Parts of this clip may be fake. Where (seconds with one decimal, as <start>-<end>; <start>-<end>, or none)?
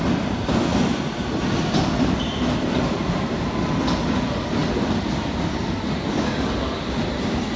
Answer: none